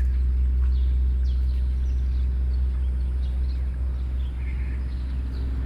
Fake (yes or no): no